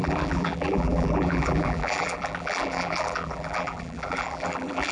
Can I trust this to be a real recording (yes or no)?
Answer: no